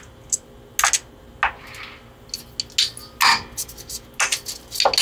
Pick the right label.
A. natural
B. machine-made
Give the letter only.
A